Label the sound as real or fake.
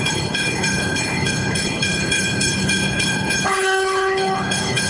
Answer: fake